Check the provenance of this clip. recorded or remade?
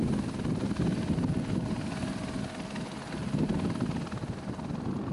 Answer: recorded